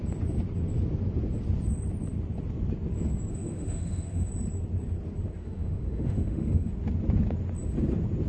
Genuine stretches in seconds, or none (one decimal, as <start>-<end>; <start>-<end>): 0.0-3.3; 4.3-5.4; 6.7-8.3